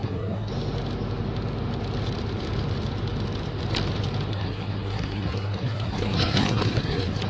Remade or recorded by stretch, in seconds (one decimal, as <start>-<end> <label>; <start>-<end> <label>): 0.0-0.5 remade; 0.5-4.3 recorded; 4.3-7.3 remade